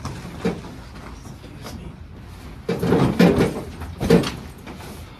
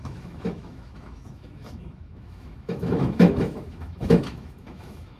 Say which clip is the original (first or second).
first